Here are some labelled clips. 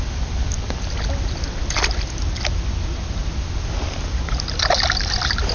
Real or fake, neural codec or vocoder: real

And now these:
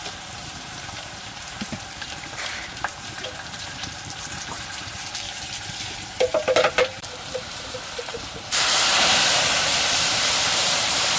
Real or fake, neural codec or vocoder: fake, vocoder, BigVGAN v2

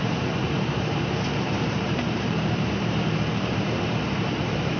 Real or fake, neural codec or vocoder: fake, vocoder, BigVGAN v2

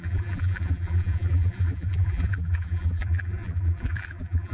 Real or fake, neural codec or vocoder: fake, vocoder, BigVGAN v2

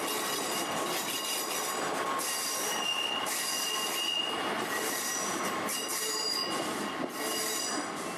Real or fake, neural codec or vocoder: real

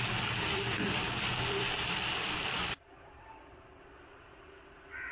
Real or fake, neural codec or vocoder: fake, vocoder, BigVGAN v2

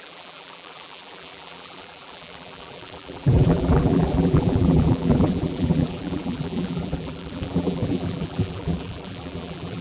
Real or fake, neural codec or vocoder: fake, vocoder, BigVGAN v2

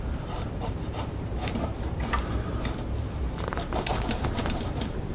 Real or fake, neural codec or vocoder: fake, vocoder, BigVGAN v2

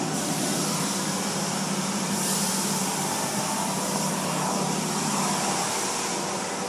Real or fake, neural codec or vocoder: fake, vocoder, BigVGAN v2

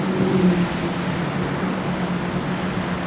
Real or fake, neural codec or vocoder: real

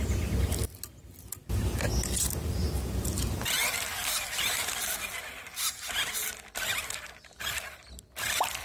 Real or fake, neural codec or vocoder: real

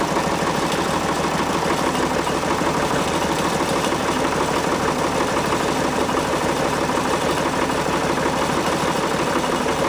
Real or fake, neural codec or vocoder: fake, vocoder, BigVGAN v2